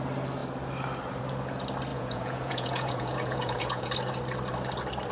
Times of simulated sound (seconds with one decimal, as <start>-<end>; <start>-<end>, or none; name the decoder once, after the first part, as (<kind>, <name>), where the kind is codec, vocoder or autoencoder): 1.9-3.9 (vocoder, Vocos)